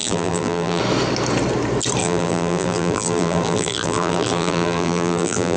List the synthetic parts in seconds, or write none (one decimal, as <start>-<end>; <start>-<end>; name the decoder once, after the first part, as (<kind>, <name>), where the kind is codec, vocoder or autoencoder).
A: 0.0-0.8 (vocoder, BigVGAN v2); 2.0-5.6